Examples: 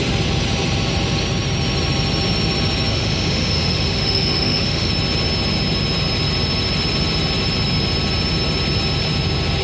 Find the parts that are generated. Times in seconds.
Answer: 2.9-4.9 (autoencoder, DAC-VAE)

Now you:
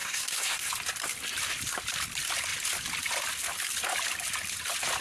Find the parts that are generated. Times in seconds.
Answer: 0.0-0.7 (codec, SNAC)

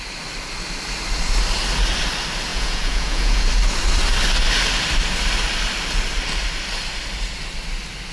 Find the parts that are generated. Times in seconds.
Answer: 2.5-3.4 (vocoder, Vocos)

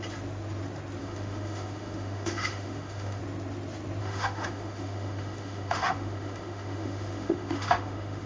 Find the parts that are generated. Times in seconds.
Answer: 1.0-3.2 (autoencoder, DAC-VAE); 4.0-8.3

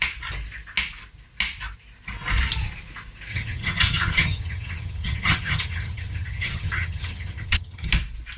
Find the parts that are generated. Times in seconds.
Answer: 3.3-7.9 (vocoder, HiFi-GAN)

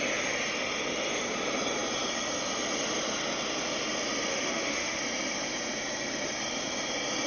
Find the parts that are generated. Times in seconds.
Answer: 4.3-5.0 (autoencoder, DAC-VAE)

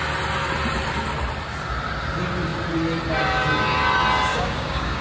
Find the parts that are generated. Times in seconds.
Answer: 4.3-5.0 (codec, DAC)